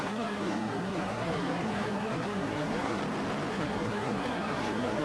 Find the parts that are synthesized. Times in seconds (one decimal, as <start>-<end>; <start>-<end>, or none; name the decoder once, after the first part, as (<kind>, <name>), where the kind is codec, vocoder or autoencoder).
0.0-3.0 (codec, SNAC); 3.5-5.0